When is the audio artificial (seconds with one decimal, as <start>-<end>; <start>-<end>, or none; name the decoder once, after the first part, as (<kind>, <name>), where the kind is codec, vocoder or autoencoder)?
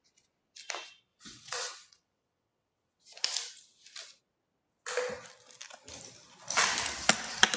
1.1-3.0 (vocoder, WaveNeXt)